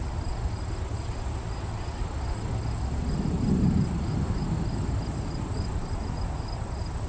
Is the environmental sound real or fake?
real